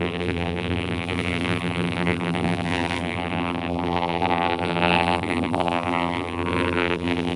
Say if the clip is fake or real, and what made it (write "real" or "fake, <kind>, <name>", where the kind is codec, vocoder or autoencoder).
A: fake, vocoder, BigVGAN v2